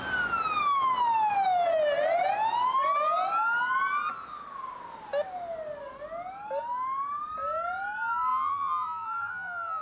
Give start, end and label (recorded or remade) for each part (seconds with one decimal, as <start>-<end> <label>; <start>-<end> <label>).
0.0-8.3 recorded; 8.3-9.8 remade